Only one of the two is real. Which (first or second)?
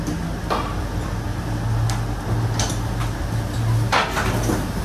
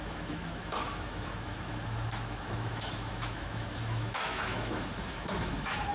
first